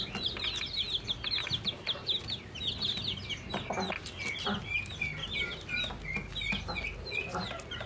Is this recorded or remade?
recorded